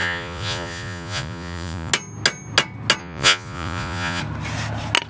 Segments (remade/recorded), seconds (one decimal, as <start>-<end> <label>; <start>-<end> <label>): 0.0-1.9 remade; 1.9-3.0 recorded; 3.0-4.2 remade; 4.2-5.1 recorded